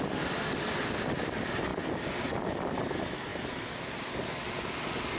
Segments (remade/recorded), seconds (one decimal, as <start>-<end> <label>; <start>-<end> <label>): 0.0-5.2 recorded